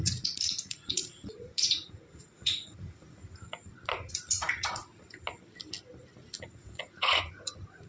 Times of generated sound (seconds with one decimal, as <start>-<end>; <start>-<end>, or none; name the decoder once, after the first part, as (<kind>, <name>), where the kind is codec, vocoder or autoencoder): 0.0-3.2 (vocoder, Vocos); 4.1-4.9; 6.5-7.9